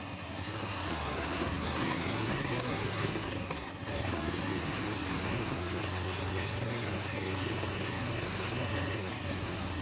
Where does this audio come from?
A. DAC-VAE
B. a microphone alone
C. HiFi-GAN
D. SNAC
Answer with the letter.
D